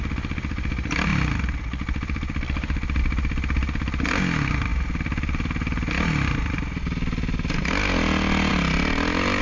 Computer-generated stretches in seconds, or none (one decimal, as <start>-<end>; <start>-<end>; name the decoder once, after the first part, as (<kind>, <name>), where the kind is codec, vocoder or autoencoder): none